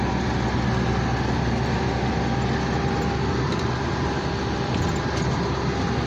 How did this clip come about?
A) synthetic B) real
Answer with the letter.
B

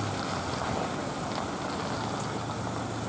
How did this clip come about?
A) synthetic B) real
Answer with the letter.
B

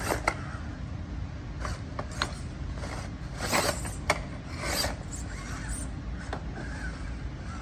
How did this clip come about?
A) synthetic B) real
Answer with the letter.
B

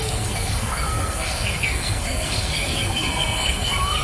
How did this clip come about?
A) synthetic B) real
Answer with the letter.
A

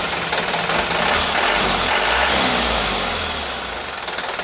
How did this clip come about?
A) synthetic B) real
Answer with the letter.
B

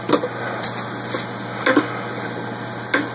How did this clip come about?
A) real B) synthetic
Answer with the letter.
A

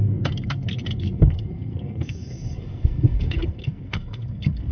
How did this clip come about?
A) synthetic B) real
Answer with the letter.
A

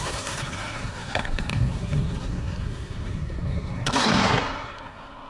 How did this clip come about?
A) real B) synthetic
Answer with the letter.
B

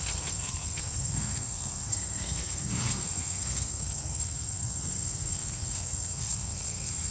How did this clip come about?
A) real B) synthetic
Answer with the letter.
B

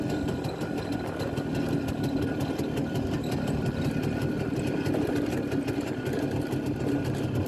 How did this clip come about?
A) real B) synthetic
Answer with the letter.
A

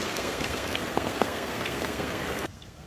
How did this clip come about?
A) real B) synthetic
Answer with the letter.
B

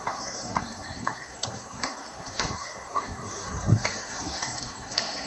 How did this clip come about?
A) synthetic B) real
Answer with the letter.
A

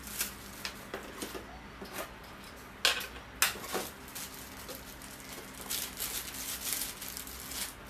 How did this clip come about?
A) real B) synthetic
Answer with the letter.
A